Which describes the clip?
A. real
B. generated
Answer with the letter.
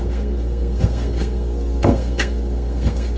B